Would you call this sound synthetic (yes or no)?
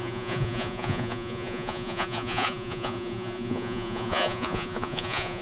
yes